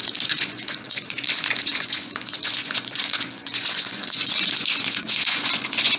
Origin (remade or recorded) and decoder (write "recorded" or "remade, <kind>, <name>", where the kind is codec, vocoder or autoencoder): remade, vocoder, Vocos